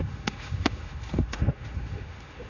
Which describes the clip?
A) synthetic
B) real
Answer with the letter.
A